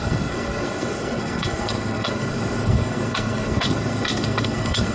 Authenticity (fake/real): fake